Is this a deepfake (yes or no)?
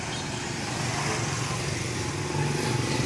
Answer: no